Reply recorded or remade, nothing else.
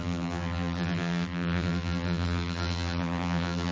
remade